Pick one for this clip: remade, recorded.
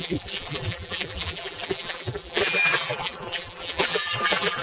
remade